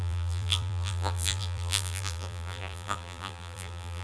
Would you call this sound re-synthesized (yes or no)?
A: yes